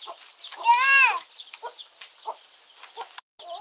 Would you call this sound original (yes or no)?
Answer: yes